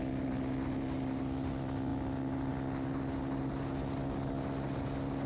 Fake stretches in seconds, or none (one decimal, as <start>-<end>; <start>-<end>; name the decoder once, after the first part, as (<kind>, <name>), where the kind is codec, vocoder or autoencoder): none